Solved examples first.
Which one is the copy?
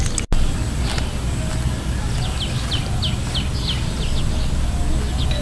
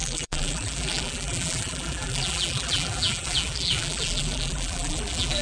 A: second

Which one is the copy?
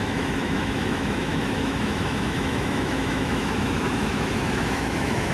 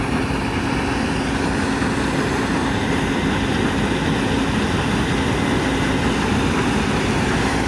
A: first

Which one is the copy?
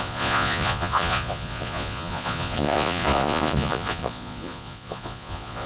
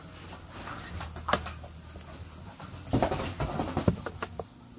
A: first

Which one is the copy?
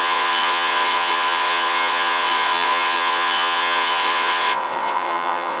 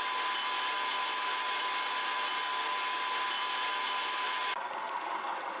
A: first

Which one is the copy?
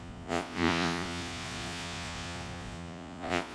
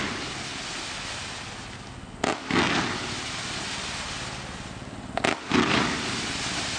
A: first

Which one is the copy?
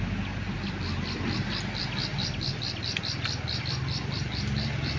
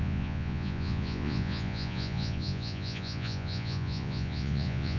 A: second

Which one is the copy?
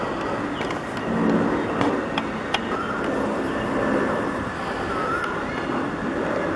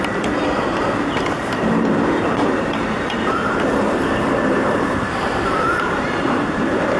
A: second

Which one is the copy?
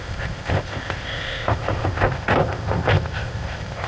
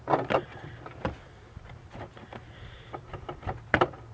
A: first